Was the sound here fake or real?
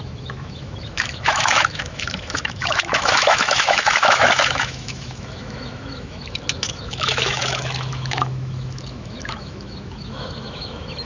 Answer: fake